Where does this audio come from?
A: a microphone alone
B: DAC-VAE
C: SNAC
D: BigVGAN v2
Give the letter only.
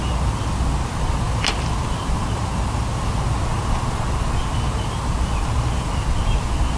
A